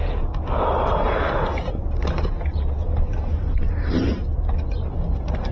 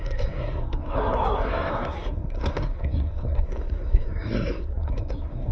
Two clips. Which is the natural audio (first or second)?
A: first